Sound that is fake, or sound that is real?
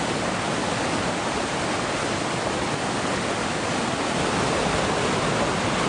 real